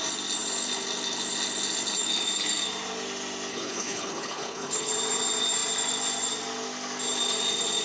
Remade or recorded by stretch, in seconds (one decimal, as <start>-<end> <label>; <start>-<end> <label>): 0.0-3.5 recorded; 3.5-4.9 remade; 4.9-7.8 recorded